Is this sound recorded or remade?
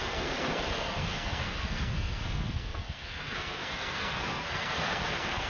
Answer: remade